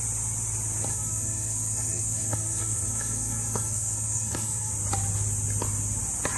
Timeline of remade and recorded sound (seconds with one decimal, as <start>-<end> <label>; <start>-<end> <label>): 0.0-0.9 recorded; 0.9-4.7 remade; 4.7-6.4 recorded